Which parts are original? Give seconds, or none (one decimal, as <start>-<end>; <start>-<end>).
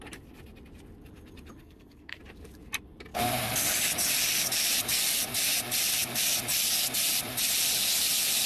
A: 0.0-1.6; 2.2-8.5